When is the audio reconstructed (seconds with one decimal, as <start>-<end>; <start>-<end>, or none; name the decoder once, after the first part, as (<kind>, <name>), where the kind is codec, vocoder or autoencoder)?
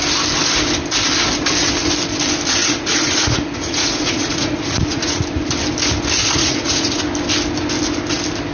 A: 2.6-5.2 (vocoder, Vocos); 6.2-7.0